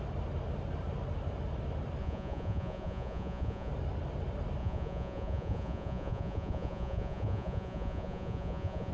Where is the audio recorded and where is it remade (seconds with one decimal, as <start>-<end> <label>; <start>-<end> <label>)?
0.0-2.0 recorded; 2.0-3.7 remade; 3.7-4.6 recorded; 4.6-8.9 remade